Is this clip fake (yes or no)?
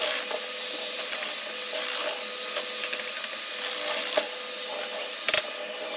no